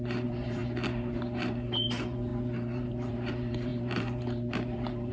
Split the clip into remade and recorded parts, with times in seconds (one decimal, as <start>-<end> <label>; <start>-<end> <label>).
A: 0.0-5.1 remade